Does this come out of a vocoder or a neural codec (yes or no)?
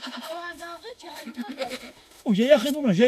yes